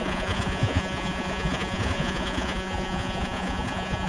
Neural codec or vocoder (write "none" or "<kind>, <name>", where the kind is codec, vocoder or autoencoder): vocoder, Vocos